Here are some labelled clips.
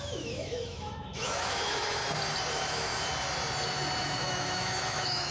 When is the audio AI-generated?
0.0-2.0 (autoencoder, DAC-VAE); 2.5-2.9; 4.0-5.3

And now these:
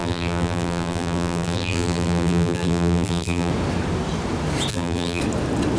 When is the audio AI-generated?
0.0-3.5 (vocoder, BigVGAN v2); 4.7-5.2

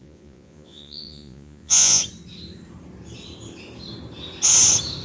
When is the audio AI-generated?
0.0-2.0 (vocoder, Vocos)

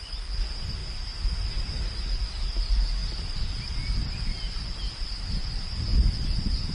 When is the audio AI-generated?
none

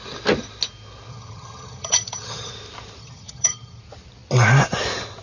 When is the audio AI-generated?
1.1-2.5 (vocoder, HiFi-GAN); 3.0-3.8

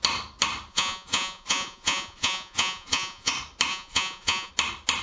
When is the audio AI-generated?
0.7-3.3 (vocoder, Vocos); 3.7-4.5